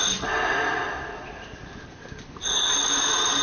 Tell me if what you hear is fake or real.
real